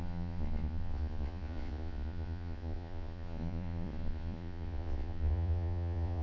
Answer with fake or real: fake